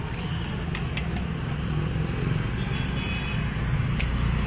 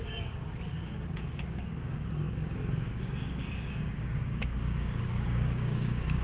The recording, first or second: first